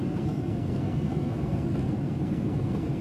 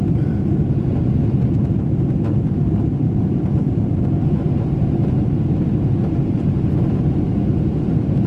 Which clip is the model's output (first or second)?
first